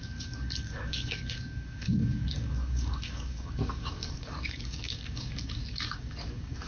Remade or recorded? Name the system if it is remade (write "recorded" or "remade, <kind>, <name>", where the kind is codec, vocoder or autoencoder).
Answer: remade, codec, DAC